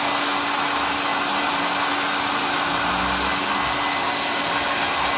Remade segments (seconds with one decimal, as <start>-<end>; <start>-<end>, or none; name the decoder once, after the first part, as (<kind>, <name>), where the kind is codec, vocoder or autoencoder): 1.1-1.6 (vocoder, BigVGAN v2)